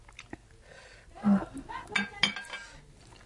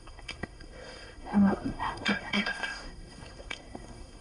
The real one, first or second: first